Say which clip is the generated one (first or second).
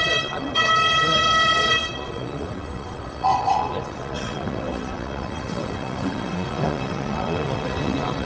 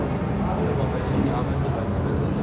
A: first